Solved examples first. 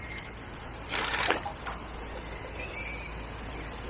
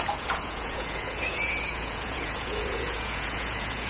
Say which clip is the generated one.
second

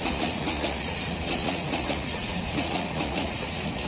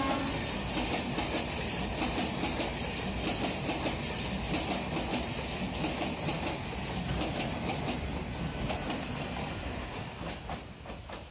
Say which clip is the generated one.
first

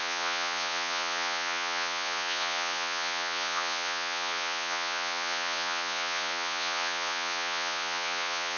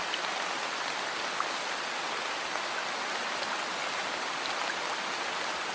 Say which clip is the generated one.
first